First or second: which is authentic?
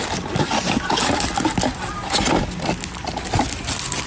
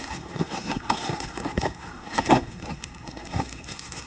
first